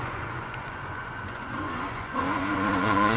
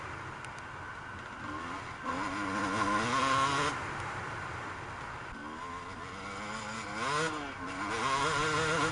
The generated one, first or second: first